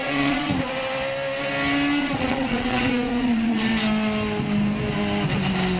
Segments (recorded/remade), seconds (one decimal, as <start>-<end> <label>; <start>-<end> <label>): 0.0-0.5 remade; 0.5-2.0 recorded; 2.0-3.7 remade; 3.7-5.8 recorded